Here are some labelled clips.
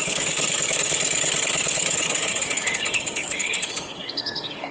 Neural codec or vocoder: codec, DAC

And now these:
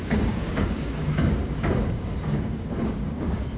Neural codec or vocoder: codec, DAC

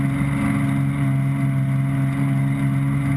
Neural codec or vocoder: none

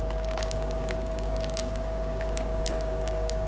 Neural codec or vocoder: codec, DAC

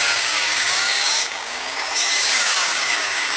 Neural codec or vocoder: codec, DAC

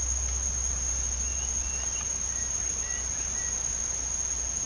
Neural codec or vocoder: none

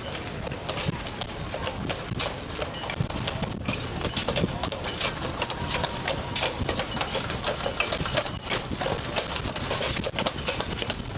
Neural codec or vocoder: none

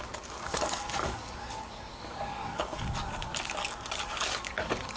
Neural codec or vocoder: codec, DAC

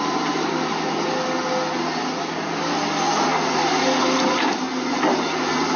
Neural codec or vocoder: none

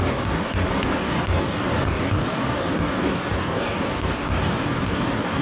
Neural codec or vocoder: codec, DAC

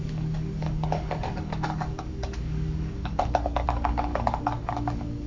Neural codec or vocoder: codec, DAC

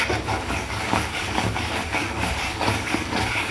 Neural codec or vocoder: codec, DAC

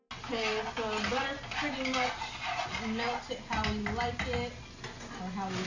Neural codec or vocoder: none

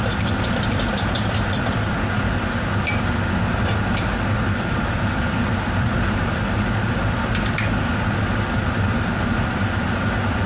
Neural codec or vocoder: none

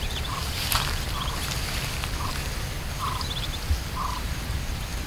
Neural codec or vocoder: none